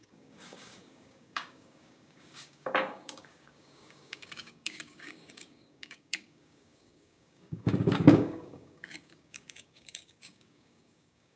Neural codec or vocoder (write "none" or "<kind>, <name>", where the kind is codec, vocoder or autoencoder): codec, DAC